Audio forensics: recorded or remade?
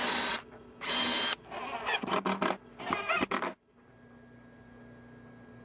recorded